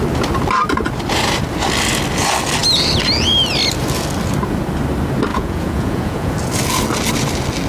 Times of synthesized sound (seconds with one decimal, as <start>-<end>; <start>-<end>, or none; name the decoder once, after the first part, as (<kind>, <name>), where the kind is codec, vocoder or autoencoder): 5.3-6.3 (vocoder, Vocos)